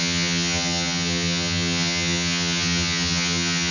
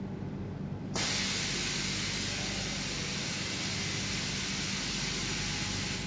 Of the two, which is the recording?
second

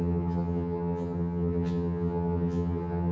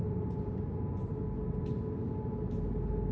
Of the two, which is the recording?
second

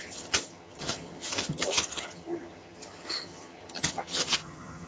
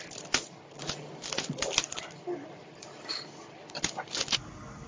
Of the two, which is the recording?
second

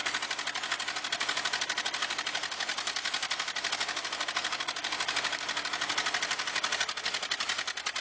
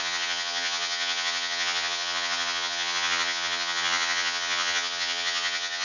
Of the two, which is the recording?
first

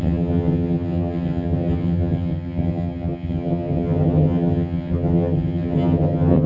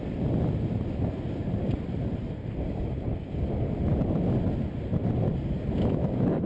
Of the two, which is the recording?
second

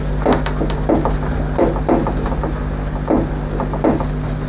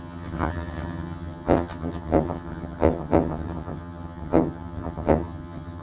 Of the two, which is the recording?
first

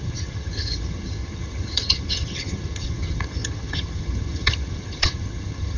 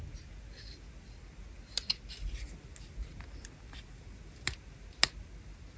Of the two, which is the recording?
second